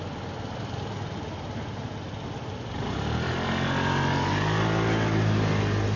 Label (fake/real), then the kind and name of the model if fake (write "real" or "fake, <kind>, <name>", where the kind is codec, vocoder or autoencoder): real